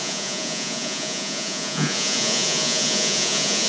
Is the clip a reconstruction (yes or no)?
yes